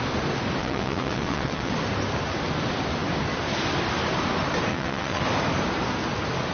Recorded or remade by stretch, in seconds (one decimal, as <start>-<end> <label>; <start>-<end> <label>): 0.0-0.6 recorded; 0.6-1.7 remade; 1.7-4.7 recorded; 4.7-5.2 remade; 5.2-6.5 recorded